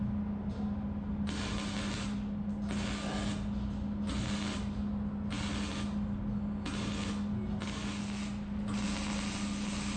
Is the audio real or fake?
real